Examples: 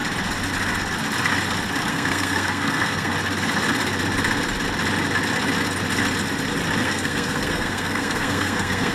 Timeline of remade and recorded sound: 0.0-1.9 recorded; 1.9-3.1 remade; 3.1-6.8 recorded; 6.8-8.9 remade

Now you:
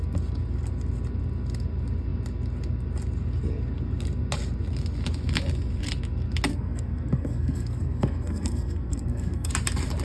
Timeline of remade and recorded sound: 0.0-6.5 recorded; 6.5-9.5 remade; 9.5-10.0 recorded

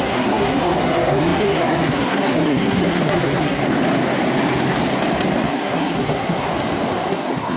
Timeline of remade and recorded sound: 0.0-3.6 remade; 3.6-5.5 recorded; 5.5-6.5 remade; 6.5-7.1 recorded; 7.1-7.6 remade